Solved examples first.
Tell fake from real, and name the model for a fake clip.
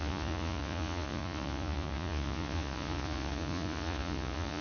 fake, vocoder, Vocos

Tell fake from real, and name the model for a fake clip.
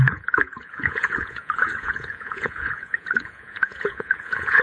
fake, vocoder, Vocos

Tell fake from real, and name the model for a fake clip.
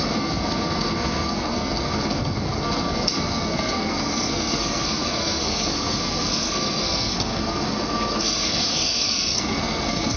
fake, codec, SNAC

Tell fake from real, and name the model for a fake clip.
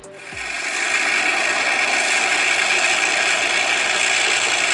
real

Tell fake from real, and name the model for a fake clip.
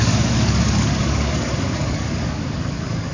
fake, codec, DAC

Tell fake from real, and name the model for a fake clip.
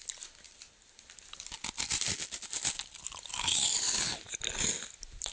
real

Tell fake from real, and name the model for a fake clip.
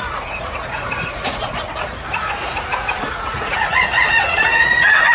fake, vocoder, Vocos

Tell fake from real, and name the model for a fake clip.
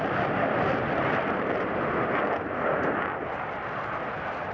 real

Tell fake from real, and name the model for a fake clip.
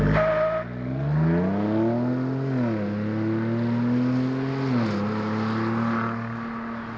real